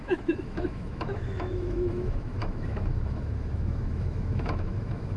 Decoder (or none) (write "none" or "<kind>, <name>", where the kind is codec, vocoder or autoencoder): autoencoder, DAC-VAE